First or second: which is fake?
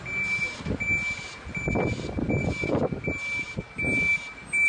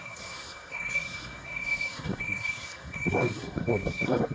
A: second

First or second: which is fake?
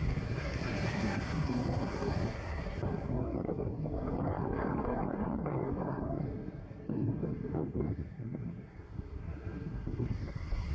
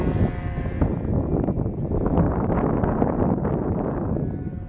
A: first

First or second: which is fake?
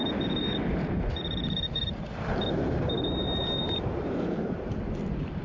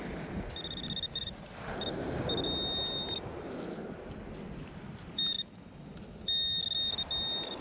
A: first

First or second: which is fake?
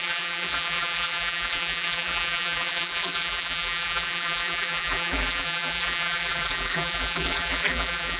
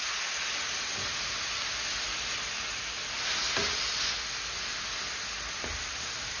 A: first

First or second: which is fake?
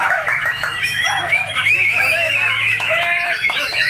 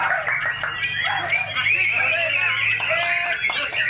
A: first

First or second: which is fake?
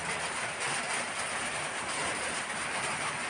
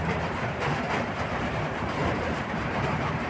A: second